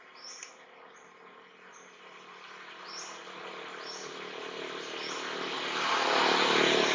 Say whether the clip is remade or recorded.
recorded